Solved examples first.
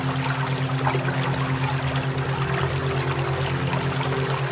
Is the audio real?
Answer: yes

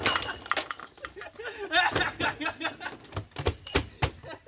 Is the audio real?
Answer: yes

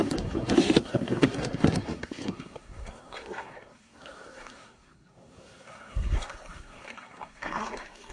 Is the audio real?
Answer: no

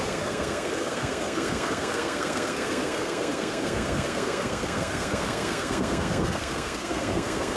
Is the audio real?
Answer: no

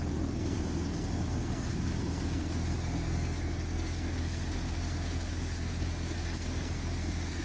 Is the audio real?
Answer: no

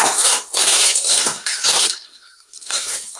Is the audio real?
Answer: no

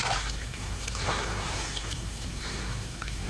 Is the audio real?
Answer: no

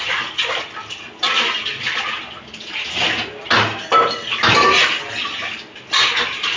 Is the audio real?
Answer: yes